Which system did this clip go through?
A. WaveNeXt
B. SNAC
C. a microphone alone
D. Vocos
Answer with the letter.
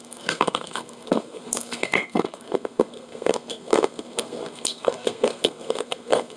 B